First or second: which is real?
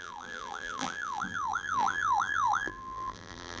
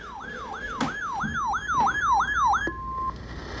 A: second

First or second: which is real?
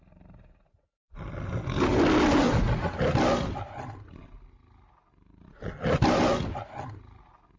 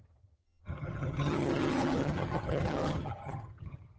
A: first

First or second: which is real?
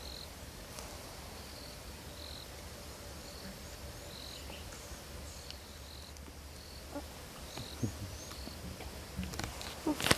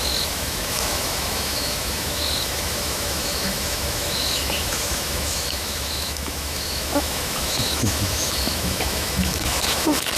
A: first